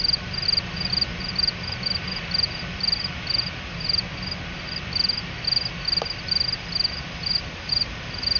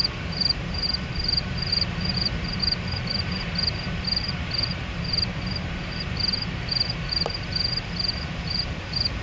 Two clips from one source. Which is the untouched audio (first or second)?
first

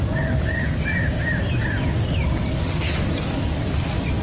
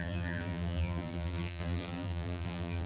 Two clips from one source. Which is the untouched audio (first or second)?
first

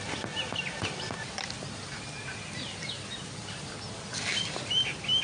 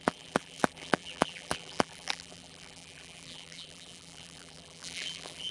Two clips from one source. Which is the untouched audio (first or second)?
first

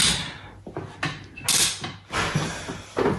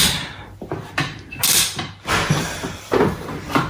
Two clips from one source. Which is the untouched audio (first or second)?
first